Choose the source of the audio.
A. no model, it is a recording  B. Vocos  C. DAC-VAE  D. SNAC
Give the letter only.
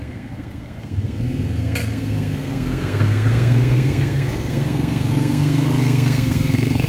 D